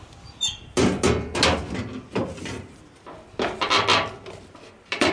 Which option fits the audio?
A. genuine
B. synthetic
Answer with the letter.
A